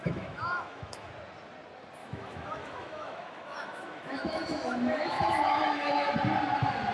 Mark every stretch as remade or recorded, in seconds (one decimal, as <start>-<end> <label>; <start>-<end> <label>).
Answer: 0.0-1.1 remade; 1.1-2.0 recorded; 2.0-6.1 remade; 6.1-6.9 recorded